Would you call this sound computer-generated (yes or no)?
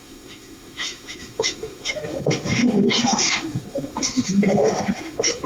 yes